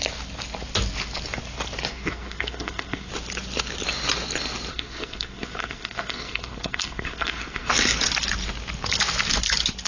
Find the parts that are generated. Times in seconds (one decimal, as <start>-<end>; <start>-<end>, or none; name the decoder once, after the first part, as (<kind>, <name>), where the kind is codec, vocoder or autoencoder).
1.9-3.1 (codec, SNAC); 4.7-7.7